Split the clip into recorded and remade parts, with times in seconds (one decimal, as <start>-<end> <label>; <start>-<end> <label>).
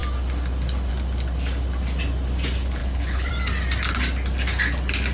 0.0-2.8 recorded; 2.8-3.3 remade; 3.3-5.1 recorded